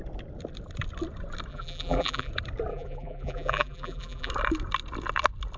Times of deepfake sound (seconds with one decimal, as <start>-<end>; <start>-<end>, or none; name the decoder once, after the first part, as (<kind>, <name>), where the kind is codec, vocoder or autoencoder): 1.5-2.3 (vocoder, BigVGAN v2); 2.7-4.3